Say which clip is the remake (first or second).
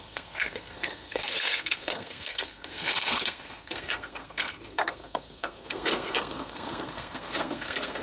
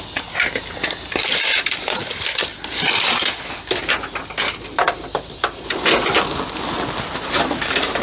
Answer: first